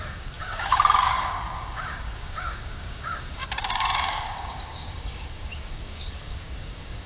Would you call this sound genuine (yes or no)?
no